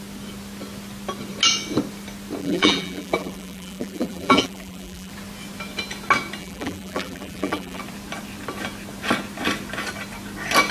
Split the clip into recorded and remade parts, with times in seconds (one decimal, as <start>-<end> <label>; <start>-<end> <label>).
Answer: 0.0-2.4 recorded; 2.4-5.1 remade; 5.1-6.4 recorded; 6.4-7.8 remade; 7.8-10.7 recorded